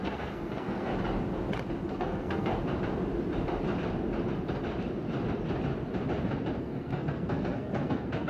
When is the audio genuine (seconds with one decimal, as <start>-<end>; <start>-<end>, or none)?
0.9-1.9; 2.5-6.6

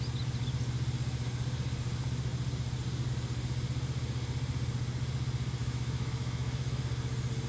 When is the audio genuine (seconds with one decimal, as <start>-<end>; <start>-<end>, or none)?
0.0-5.6; 6.8-7.5

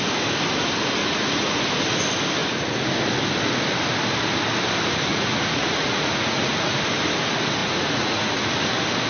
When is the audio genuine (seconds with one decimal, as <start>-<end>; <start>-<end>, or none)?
0.0-1.0; 1.5-2.4; 2.9-5.1; 6.8-7.6; 8.5-9.1

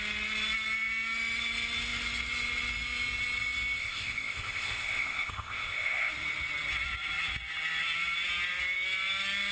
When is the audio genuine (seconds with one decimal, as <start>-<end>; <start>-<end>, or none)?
0.0-3.8; 6.1-9.5

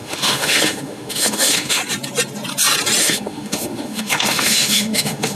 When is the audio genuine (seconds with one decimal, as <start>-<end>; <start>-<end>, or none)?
1.8-3.0